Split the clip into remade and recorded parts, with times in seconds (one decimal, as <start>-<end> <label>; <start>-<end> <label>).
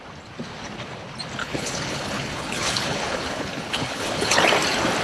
0.0-1.4 recorded; 1.4-4.4 remade; 4.4-5.0 recorded